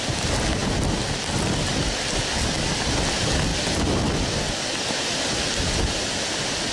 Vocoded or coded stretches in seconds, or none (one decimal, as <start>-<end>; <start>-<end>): none